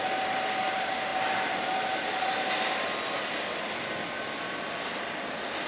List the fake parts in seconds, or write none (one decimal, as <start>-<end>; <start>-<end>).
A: none